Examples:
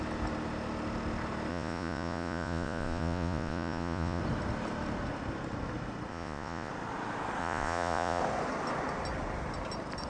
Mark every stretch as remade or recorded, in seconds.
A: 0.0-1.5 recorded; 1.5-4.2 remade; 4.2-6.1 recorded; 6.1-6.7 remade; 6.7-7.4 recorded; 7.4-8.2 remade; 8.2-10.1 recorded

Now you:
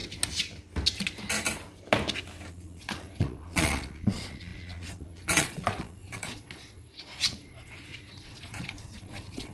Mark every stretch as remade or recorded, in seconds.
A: 0.0-2.5 recorded; 2.5-9.5 remade

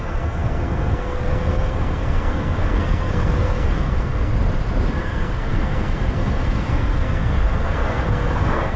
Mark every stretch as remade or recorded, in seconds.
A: 0.0-4.3 remade; 4.3-5.0 recorded; 5.0-8.8 remade

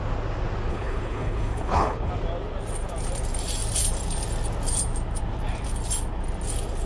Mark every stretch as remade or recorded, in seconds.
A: 0.0-0.7 recorded; 0.7-2.1 remade; 2.1-6.9 recorded

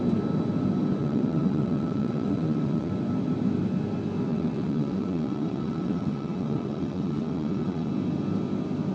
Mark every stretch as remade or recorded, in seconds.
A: 0.0-1.0 recorded; 1.0-2.9 remade; 2.9-4.3 recorded; 4.3-7.9 remade; 7.9-8.9 recorded